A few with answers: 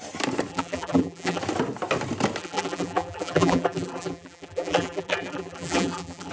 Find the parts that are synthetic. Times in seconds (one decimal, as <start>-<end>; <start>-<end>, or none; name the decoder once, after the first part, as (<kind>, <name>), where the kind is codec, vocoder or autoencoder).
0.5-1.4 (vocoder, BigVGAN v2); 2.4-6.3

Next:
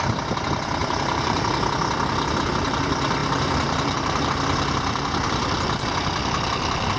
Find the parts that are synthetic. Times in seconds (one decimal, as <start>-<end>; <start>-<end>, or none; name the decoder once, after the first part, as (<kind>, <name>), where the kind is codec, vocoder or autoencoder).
0.8-1.4 (vocoder, BigVGAN v2); 3.2-4.3

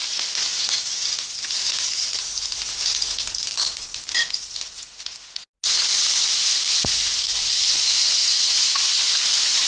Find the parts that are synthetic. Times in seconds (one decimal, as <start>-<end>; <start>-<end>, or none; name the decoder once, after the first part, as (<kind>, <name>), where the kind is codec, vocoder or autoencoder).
3.5-4.3 (vocoder, BigVGAN v2)